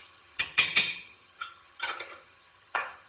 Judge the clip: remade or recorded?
remade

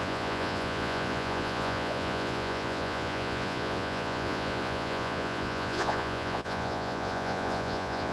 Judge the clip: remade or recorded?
remade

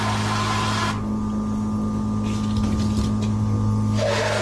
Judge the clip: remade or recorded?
recorded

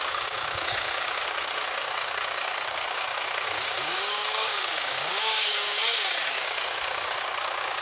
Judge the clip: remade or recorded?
remade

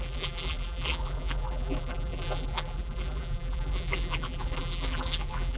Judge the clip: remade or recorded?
remade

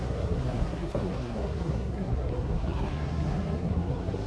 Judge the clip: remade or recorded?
remade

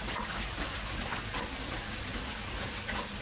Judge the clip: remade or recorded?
recorded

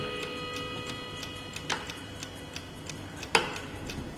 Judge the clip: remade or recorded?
recorded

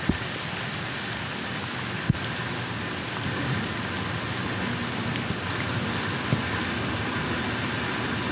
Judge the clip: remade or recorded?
recorded